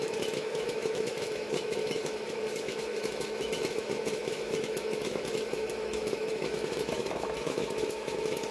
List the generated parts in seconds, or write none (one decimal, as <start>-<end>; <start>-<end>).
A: 0.0-8.5